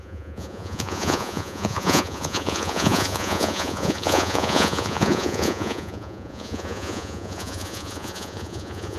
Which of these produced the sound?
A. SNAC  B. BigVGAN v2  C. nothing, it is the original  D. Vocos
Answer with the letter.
D